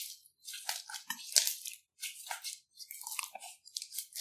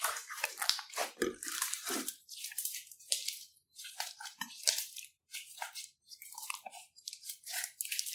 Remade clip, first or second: second